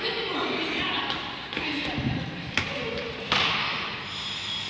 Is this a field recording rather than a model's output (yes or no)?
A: yes